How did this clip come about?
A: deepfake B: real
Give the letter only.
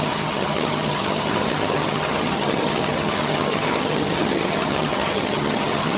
A